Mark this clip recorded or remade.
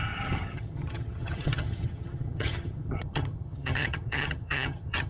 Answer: remade